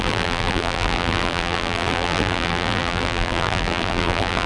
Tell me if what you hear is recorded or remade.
remade